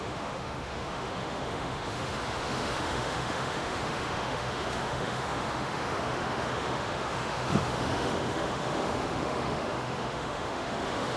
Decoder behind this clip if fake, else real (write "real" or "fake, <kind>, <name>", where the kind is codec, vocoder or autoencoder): fake, autoencoder, DAC-VAE